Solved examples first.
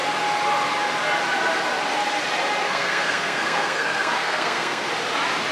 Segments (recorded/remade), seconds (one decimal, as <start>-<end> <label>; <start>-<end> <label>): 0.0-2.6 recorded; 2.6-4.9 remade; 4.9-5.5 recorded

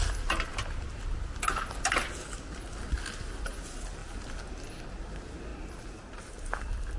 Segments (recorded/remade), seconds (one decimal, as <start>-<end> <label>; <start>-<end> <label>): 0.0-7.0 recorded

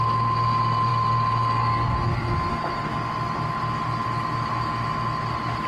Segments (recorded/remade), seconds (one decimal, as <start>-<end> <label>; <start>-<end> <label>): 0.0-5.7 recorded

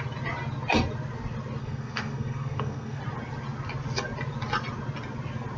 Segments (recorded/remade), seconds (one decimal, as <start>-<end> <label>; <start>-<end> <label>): 0.0-1.6 recorded; 1.6-3.0 remade; 3.0-5.6 recorded